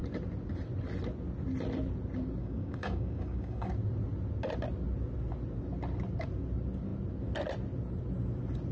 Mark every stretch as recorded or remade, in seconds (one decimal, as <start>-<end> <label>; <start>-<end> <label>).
0.0-2.4 recorded; 2.4-3.7 remade; 3.7-8.7 recorded